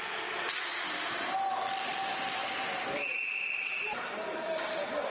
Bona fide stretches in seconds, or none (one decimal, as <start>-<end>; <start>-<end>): 0.0-2.4